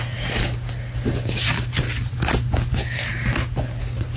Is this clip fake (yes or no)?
no